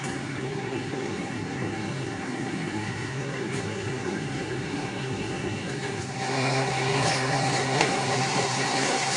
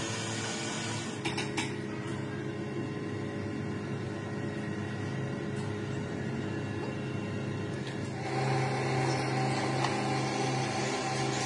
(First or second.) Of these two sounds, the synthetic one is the first